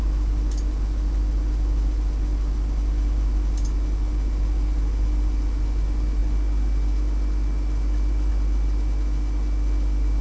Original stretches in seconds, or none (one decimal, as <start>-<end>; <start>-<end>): 0.0-10.2